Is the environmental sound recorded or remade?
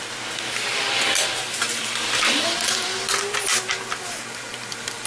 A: recorded